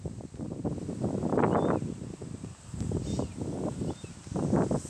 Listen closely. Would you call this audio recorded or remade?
recorded